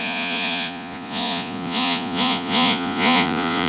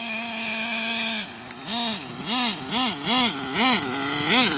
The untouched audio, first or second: second